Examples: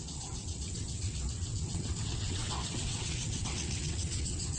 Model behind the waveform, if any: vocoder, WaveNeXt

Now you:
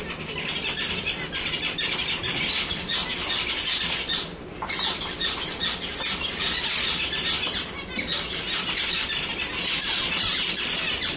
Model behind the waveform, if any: vocoder, BigVGAN v2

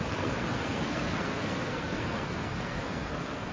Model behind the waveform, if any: codec, SNAC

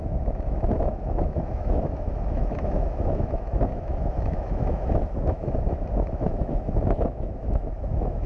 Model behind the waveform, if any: autoencoder, DAC-VAE